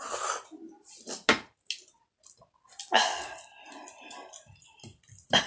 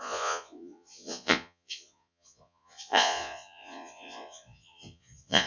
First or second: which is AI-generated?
second